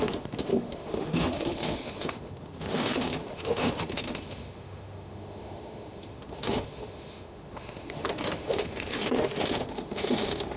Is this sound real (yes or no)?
no